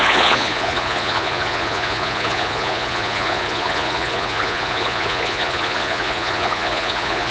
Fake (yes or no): yes